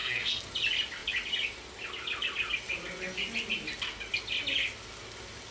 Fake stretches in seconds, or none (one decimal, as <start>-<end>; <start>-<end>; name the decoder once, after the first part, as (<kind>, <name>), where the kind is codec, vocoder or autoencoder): 0.0-0.5 (codec, SNAC)

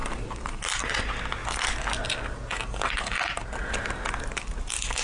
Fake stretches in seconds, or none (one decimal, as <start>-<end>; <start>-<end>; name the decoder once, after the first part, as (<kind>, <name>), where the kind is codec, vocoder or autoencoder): none

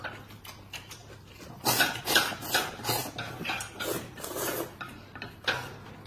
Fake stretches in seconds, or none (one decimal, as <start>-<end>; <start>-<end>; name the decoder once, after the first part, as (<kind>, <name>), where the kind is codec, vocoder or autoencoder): none

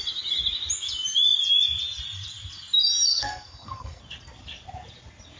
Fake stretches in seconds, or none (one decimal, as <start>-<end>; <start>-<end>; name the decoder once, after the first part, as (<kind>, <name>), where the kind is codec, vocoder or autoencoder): 3.1-4.0 (codec, SNAC)

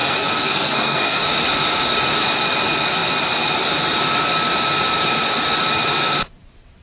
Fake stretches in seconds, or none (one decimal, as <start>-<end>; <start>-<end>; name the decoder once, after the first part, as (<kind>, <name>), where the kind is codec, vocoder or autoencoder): 0.0-1.2 (codec, SNAC)

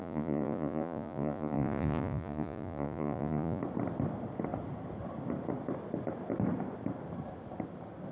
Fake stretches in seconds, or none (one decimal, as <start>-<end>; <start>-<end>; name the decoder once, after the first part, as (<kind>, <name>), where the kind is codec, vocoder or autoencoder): 0.0-3.6 (vocoder, Vocos)

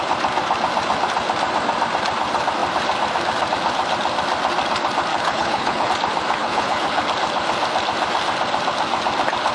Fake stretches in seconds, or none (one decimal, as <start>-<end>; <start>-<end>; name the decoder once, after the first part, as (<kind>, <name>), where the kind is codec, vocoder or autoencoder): 5.1-5.9 (codec, HILCodec); 6.4-7.0

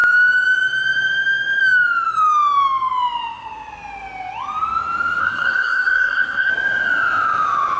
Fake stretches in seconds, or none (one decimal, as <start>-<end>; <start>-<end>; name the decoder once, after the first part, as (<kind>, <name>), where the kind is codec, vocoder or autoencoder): 5.2-6.5 (codec, SNAC)